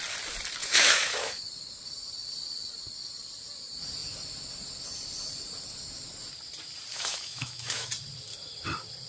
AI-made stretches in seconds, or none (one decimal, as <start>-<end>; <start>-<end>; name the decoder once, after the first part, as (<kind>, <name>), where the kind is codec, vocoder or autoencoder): 0.6-1.4 (autoencoder, DAC-VAE); 6.9-7.9